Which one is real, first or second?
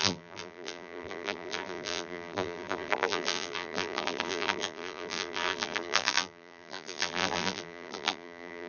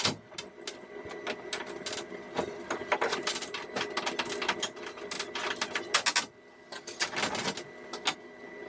second